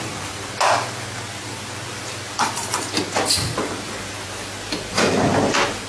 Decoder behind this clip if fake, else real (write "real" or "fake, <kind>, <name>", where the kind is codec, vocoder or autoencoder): real